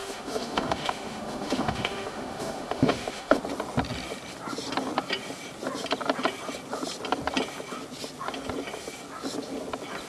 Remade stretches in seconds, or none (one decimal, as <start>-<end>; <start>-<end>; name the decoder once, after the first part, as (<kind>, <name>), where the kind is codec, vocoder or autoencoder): 0.0-3.4 (autoencoder, DAC-VAE)